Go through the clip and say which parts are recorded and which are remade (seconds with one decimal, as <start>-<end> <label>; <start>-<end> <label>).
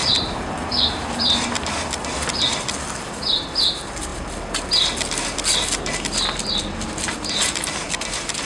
0.0-1.4 remade; 1.4-8.4 recorded